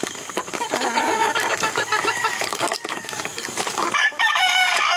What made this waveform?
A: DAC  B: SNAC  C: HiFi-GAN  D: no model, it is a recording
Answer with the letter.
A